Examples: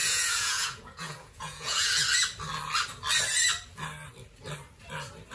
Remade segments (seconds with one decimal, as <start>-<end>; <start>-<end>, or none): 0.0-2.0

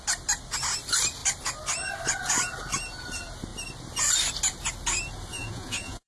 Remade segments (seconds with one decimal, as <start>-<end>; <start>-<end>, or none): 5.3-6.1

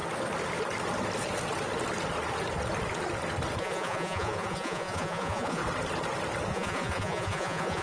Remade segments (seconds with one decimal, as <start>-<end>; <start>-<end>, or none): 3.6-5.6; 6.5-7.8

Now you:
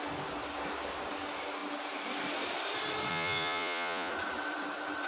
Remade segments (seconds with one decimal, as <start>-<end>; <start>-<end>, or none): 3.1-4.1

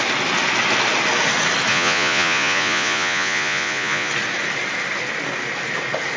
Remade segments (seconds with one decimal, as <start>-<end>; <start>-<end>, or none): 1.7-4.1

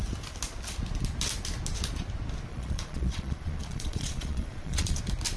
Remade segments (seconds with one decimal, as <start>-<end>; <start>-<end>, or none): 2.5-5.0